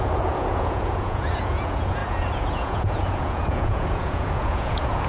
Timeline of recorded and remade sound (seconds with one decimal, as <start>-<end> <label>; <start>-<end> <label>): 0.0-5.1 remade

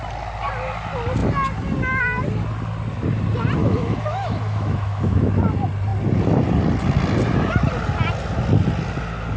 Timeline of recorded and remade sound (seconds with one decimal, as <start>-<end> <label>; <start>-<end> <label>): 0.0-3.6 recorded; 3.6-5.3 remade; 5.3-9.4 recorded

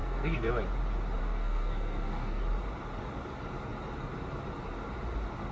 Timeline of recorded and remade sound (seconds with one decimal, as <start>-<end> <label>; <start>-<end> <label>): 0.0-0.5 remade; 0.5-1.2 recorded; 1.2-2.4 remade; 2.4-5.5 recorded

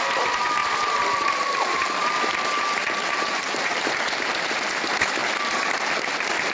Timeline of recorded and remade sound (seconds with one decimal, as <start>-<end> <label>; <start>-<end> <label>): 0.0-0.6 recorded; 0.6-4.5 remade; 4.5-6.5 recorded